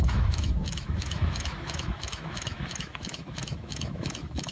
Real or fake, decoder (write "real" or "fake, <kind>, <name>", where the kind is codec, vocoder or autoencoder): fake, autoencoder, DAC-VAE